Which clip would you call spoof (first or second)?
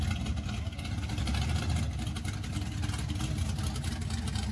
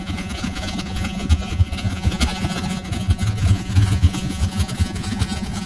second